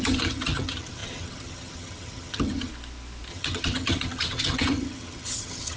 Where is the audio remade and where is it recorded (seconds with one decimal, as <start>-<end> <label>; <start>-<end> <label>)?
0.0-2.7 remade; 2.7-3.3 recorded; 3.3-5.8 remade